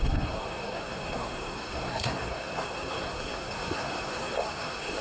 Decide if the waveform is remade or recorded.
remade